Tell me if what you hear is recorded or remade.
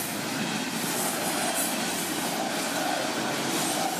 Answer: recorded